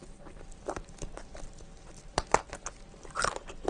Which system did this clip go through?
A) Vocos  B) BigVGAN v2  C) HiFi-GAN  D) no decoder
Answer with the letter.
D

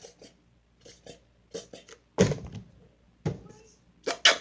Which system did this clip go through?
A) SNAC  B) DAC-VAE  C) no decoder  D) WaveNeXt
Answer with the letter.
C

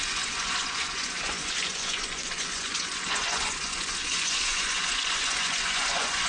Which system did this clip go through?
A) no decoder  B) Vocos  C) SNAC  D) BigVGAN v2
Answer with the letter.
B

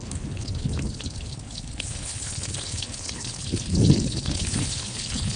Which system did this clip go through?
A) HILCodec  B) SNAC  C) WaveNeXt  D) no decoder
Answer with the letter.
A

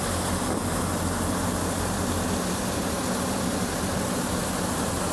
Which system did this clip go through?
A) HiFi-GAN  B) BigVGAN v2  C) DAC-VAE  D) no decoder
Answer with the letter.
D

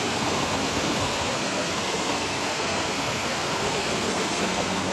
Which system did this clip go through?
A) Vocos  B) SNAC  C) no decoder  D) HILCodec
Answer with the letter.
B